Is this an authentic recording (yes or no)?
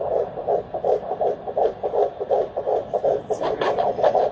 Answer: no